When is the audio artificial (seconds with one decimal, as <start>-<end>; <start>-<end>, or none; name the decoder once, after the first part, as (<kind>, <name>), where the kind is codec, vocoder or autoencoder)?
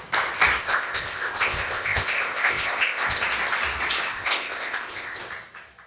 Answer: 0.6-3.2 (codec, ZipCodec); 4.1-5.2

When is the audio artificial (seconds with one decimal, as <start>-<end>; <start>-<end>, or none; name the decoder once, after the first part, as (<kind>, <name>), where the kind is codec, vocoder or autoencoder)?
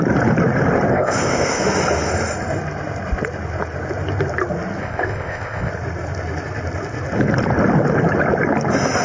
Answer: 0.9-1.6 (codec, ZipCodec); 4.8-5.7